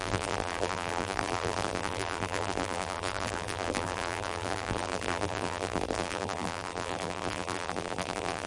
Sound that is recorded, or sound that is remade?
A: remade